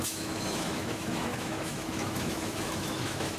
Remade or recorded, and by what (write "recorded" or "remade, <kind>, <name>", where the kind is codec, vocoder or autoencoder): remade, autoencoder, DAC-VAE